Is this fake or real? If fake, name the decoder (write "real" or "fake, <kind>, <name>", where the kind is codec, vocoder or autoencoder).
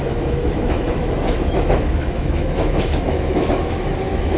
fake, autoencoder, DAC-VAE